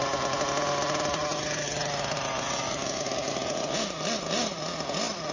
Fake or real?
real